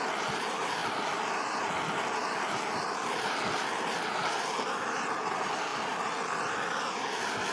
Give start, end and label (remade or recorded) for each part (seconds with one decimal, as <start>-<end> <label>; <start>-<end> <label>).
0.0-7.5 recorded